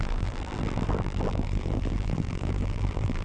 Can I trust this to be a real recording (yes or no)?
no